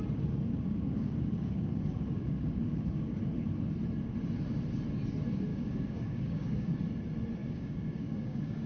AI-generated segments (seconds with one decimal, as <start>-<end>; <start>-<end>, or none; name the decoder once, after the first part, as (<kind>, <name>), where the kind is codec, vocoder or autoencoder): 0.5-3.2 (codec, DAC); 5.5-6.8; 7.4-8.7